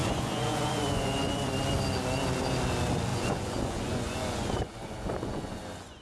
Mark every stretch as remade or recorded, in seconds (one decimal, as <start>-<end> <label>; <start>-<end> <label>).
0.0-1.5 remade; 1.5-3.1 recorded; 3.1-6.0 remade